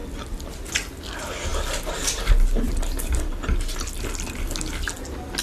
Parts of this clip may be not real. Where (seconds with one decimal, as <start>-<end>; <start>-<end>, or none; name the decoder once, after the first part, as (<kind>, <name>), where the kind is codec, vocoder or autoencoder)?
none